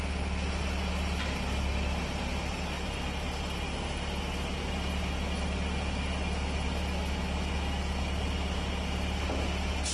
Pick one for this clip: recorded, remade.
recorded